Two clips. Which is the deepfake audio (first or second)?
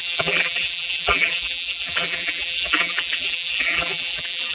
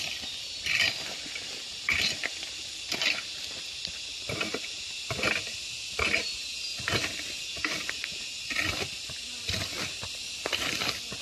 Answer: first